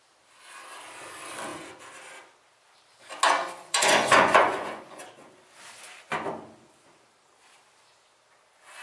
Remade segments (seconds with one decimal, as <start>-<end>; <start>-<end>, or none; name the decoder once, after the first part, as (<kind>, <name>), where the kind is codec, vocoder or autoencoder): 3.4-5.1 (vocoder, Vocos)